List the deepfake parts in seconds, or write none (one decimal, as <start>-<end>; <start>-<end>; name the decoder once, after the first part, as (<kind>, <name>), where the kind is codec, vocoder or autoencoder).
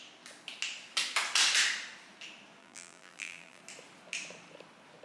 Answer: 2.6-3.6 (vocoder, BigVGAN v2)